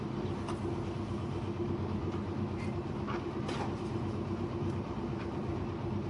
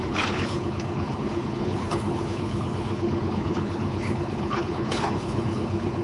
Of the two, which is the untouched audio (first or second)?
first